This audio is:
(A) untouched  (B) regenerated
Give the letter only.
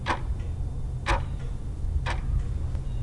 A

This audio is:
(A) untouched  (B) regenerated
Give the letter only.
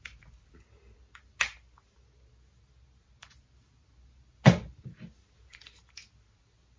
A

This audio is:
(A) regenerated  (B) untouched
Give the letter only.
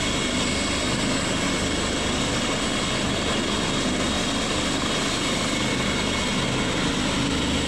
B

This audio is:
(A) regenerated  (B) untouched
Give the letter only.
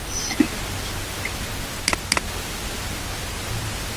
B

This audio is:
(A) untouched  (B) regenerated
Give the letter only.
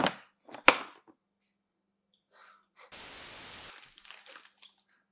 A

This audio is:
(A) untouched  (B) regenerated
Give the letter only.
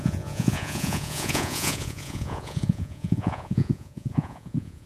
B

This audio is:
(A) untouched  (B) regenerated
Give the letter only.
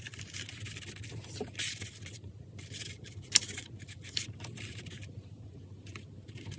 A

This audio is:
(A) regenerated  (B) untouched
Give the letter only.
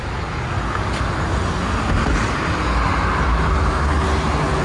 B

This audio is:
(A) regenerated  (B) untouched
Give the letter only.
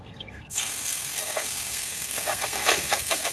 A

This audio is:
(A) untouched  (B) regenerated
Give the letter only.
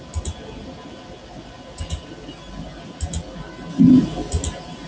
A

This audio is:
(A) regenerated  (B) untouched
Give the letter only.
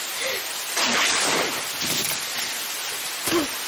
B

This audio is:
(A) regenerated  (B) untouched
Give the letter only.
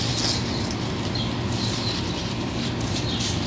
B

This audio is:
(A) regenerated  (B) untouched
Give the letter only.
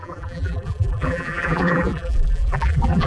A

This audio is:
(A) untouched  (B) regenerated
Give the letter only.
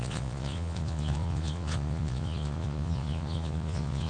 B